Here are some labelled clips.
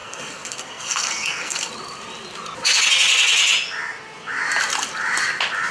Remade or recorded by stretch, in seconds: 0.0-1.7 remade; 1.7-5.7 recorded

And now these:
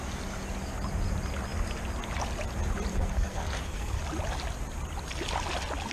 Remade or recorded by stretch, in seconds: 0.0-2.9 recorded; 2.9-4.0 remade; 4.0-5.9 recorded

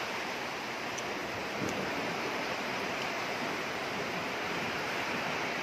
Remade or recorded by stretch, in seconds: 0.0-1.4 recorded; 1.4-4.8 remade; 4.8-5.6 recorded

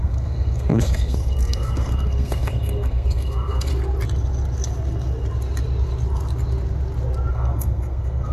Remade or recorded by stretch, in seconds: 0.0-3.7 remade; 3.7-7.3 recorded; 7.3-8.3 remade